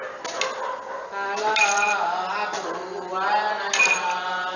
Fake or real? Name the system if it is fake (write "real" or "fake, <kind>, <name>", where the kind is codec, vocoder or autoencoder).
real